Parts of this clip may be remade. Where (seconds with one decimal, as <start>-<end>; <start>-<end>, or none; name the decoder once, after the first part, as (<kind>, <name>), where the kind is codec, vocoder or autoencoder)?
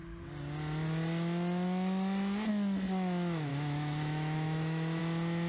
3.5-5.0 (autoencoder, DAC-VAE)